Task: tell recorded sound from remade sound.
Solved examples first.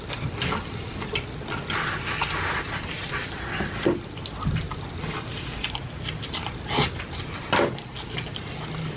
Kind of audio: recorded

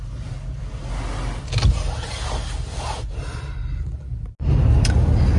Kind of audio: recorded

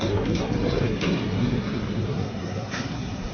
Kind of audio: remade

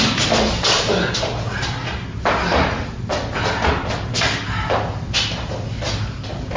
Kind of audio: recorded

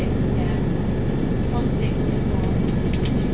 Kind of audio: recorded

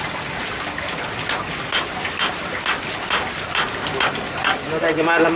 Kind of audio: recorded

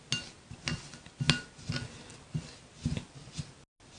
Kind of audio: recorded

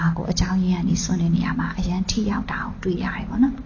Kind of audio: recorded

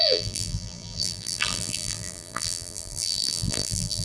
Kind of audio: remade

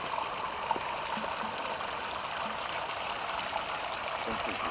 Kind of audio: recorded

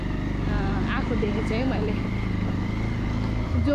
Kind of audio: recorded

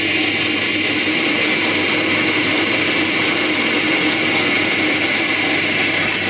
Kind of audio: recorded